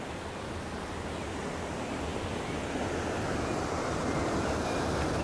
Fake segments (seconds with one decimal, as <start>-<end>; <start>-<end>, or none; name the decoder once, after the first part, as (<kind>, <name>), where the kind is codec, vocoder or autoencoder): none

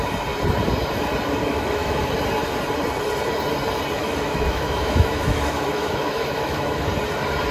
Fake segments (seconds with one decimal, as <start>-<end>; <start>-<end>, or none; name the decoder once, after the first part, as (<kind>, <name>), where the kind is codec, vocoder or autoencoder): 1.4-2.0 (autoencoder, DAC-VAE); 4.0-6.8